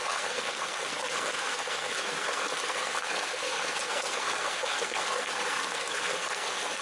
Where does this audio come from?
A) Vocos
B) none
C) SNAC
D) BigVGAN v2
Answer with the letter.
C